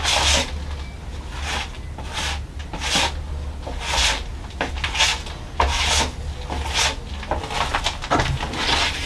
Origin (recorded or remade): recorded